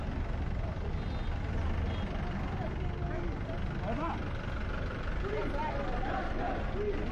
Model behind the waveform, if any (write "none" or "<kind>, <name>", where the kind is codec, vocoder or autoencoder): none